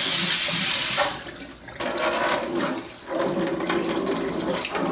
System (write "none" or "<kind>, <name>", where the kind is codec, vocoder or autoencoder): none